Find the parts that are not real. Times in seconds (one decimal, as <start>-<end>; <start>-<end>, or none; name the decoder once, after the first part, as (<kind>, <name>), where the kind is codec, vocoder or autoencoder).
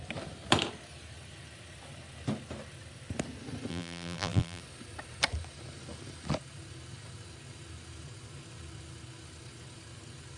3.7-4.6 (vocoder, BigVGAN v2)